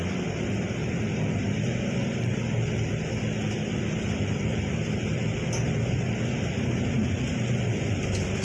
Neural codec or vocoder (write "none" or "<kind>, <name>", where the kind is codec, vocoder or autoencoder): vocoder, BigVGAN v2